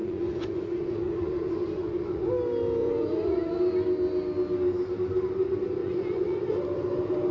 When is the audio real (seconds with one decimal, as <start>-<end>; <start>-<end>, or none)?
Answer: 2.3-2.8; 3.5-5.8; 6.4-7.3